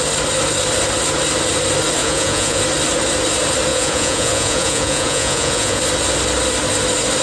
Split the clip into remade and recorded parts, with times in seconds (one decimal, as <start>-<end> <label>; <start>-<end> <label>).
0.0-2.0 recorded; 2.0-2.6 remade; 2.6-3.7 recorded; 3.7-5.8 remade; 5.8-7.2 recorded